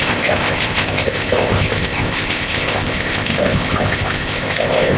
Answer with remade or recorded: remade